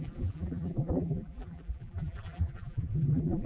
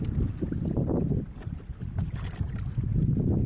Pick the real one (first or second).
second